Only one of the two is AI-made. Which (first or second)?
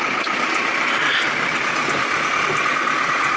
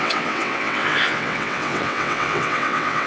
second